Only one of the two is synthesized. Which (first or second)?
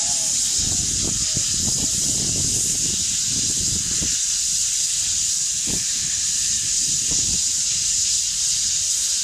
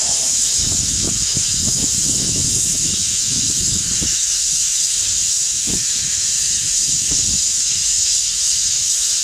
second